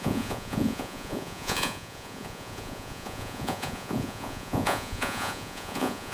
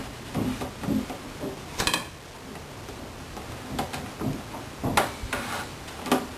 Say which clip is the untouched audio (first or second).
second